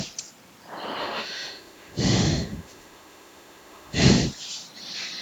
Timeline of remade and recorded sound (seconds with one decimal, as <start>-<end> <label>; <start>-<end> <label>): 0.0-1.0 recorded; 1.0-4.1 remade; 4.1-5.2 recorded

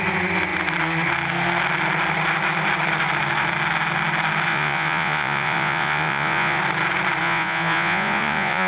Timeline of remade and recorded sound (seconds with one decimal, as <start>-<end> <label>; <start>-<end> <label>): 0.0-4.5 recorded; 4.5-6.6 remade; 6.6-7.2 recorded; 7.2-8.7 remade

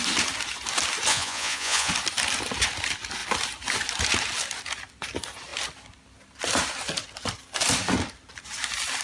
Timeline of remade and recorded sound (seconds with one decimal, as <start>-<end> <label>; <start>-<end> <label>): 0.0-1.1 recorded; 1.1-1.9 remade; 1.9-9.0 recorded